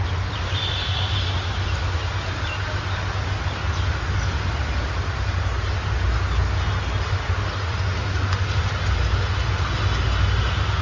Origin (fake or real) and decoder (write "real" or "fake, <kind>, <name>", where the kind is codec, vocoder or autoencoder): real